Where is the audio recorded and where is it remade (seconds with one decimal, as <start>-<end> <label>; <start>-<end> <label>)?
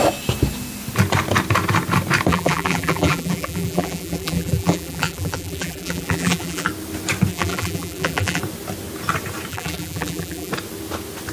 0.0-2.3 recorded; 2.3-6.7 remade; 6.7-7.3 recorded; 7.3-8.4 remade; 8.4-9.5 recorded; 9.5-10.5 remade; 10.5-11.3 recorded